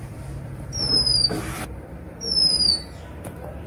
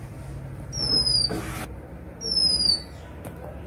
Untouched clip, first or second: second